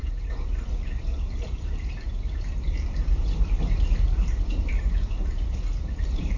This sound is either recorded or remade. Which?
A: remade